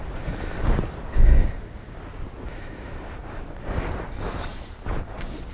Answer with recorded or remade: recorded